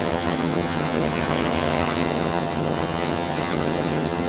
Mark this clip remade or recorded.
remade